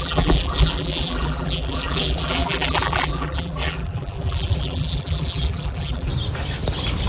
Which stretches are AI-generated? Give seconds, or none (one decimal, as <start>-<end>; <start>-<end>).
0.0-6.1